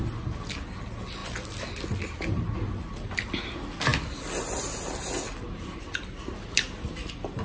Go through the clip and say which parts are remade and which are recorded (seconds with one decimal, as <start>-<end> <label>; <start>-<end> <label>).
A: 0.0-7.4 recorded